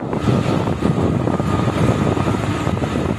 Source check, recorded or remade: recorded